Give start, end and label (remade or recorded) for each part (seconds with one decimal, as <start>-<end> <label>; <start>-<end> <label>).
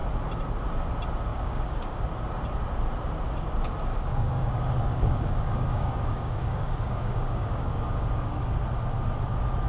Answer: 0.0-1.3 recorded; 1.3-2.0 remade; 2.0-3.9 recorded; 3.9-8.6 remade; 8.6-9.7 recorded